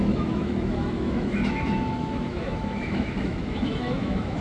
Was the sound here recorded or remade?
remade